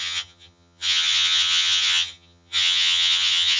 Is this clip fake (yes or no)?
yes